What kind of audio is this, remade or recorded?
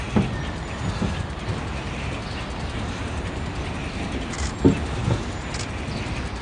recorded